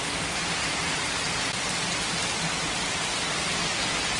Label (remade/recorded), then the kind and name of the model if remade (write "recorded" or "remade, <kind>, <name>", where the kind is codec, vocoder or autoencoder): recorded